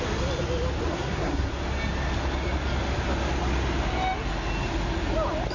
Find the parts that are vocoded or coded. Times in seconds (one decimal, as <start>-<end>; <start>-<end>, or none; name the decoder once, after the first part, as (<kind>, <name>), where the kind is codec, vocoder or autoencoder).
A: 0.9-1.5 (codec, SNAC)